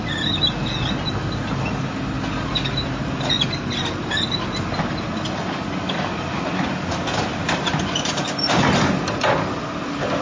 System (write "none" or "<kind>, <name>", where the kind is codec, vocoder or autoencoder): none